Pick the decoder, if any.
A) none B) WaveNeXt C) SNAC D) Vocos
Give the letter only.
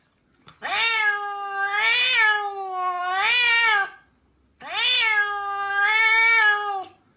A